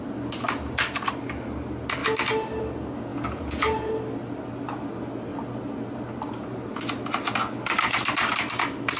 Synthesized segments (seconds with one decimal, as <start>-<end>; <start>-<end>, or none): 3.1-3.9